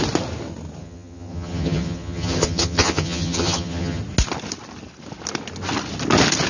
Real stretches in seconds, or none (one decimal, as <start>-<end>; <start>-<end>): 0.0-0.8; 4.0-6.5